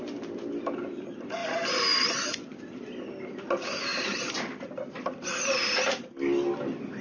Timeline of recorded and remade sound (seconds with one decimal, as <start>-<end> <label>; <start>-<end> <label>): 0.0-1.4 recorded; 1.4-2.9 remade; 2.9-3.9 recorded; 3.9-6.6 remade; 6.6-7.0 recorded